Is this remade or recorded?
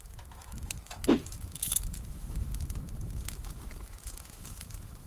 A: remade